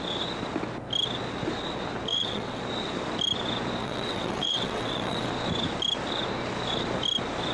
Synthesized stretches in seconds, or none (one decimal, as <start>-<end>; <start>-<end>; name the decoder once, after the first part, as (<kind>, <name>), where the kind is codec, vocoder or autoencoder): 2.1-2.6 (vocoder, WaveNeXt); 3.8-5.3